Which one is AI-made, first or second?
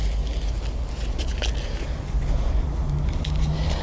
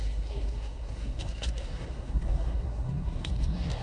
second